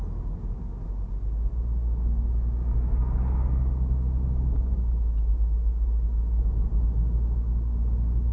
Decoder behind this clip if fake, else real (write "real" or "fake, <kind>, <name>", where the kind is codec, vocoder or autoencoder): real